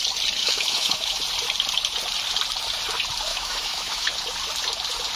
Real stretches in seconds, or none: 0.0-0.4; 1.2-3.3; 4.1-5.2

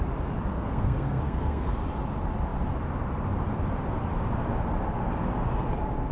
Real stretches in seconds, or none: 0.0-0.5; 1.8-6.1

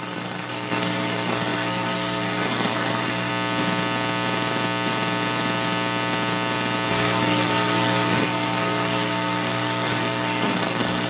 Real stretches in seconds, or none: 3.3-6.9